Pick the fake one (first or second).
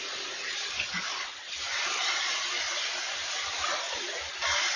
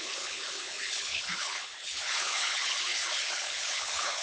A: second